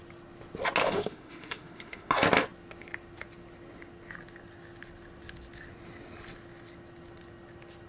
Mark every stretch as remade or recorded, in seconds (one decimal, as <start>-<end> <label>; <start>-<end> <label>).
0.0-0.8 recorded; 0.8-2.1 remade; 2.1-7.9 recorded